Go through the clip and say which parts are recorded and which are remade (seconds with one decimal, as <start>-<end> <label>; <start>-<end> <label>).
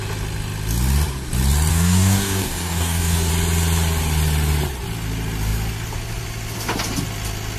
0.0-1.7 recorded; 1.7-3.3 remade; 3.3-7.6 recorded